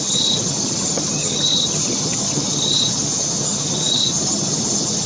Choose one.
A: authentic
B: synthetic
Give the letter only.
B